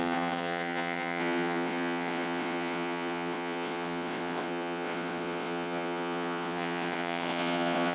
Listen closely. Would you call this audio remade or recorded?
remade